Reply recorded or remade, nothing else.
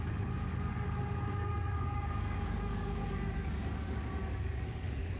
remade